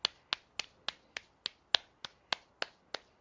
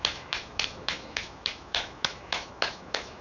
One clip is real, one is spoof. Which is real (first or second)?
first